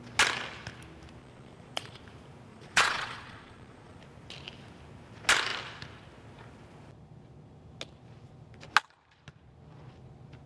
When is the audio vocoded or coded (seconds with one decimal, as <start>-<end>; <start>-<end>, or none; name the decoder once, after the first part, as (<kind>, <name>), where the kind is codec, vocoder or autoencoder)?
1.2-2.0 (vocoder, Vocos); 2.5-4.0